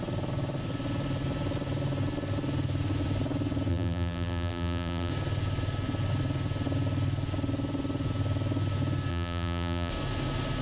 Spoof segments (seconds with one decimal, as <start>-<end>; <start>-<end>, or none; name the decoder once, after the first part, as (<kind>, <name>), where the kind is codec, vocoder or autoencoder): 3.7-5.1 (vocoder, BigVGAN v2); 9.1-9.9